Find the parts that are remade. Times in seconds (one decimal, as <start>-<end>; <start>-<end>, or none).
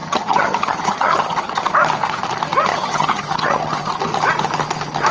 0.0-1.7; 2.7-4.0